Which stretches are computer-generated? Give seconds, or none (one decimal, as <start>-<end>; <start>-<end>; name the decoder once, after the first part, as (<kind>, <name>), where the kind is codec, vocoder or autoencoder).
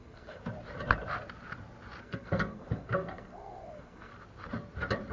0.0-0.4 (codec, SNAC); 2.0-4.1